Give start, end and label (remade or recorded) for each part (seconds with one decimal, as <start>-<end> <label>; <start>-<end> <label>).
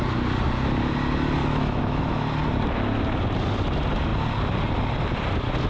0.0-1.4 recorded; 1.4-2.3 remade; 2.3-5.7 recorded